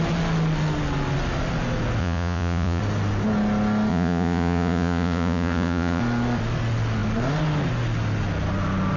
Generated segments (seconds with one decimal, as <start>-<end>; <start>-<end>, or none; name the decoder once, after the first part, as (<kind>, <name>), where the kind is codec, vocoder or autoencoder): 2.0-2.8 (vocoder, Vocos); 3.9-6.0